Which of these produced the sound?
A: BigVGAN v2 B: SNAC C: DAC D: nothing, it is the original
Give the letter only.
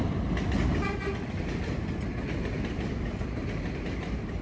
D